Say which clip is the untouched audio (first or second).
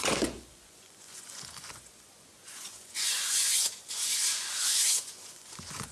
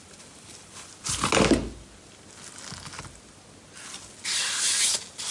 second